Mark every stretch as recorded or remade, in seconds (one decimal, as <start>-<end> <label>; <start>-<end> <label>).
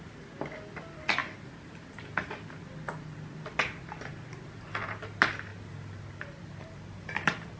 0.0-7.6 recorded